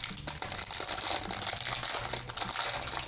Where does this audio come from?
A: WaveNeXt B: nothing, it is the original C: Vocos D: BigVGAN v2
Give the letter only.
B